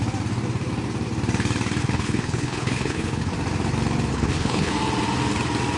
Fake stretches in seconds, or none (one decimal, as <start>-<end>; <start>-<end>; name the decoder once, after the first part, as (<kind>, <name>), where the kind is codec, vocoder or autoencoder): 1.8-3.3 (codec, HILCodec); 4.1-4.7